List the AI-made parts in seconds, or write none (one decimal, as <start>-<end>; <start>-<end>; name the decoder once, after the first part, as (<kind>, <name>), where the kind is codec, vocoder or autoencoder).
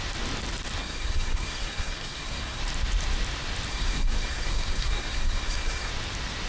0.8-2.6 (codec, SNAC); 3.7-5.9